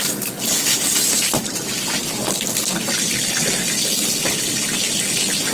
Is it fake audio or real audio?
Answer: real